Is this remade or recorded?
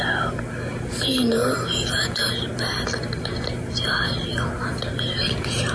recorded